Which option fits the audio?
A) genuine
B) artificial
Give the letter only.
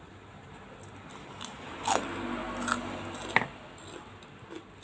A